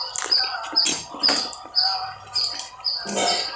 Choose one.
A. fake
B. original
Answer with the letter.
B